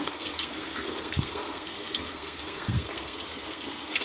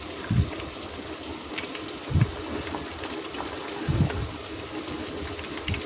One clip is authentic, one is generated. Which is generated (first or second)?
first